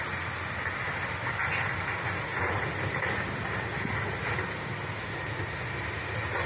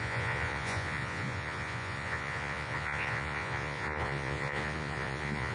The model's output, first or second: second